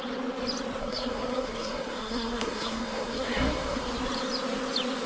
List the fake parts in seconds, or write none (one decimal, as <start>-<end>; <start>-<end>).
0.8-3.9